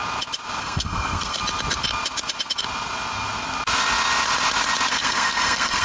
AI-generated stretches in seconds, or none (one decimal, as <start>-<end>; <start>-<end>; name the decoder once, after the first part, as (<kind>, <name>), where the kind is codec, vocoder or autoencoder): 0.6-1.4 (codec, SNAC); 4.9-5.8